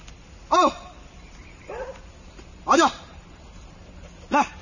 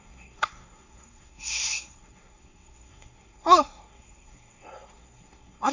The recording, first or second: first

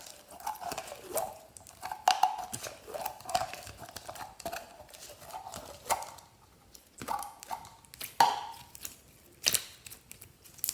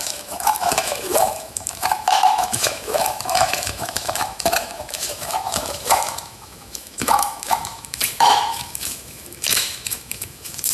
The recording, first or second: first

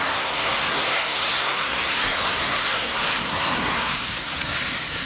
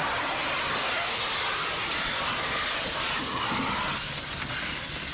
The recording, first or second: second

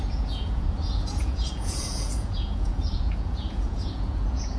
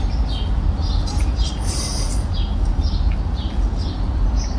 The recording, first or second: second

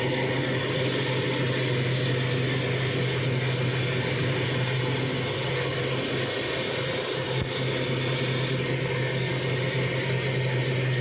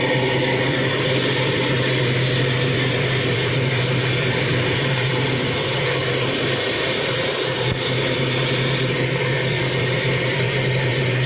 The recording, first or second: first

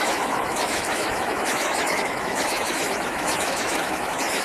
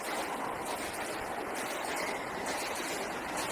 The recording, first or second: second